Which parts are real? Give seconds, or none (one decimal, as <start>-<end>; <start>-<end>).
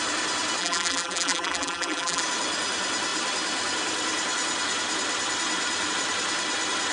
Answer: 0.0-0.6; 2.2-6.9